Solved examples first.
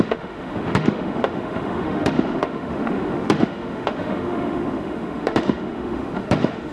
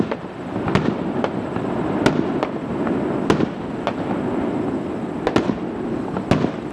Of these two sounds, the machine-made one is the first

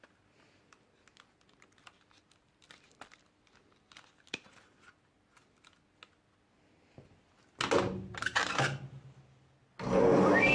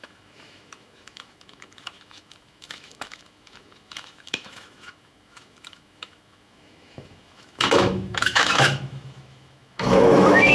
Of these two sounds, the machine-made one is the second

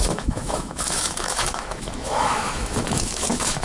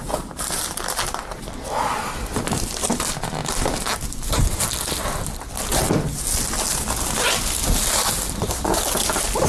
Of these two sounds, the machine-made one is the first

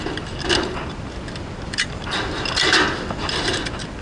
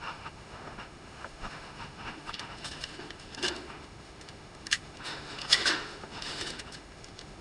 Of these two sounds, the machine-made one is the second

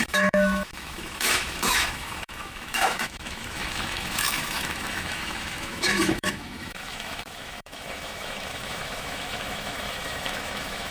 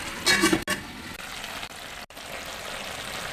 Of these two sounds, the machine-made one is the first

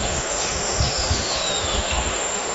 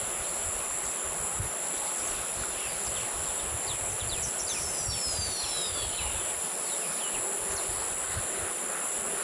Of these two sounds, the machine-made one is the first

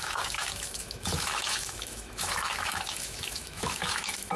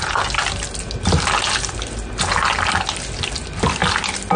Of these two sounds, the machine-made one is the first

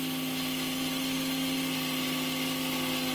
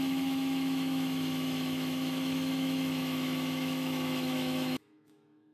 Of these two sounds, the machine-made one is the second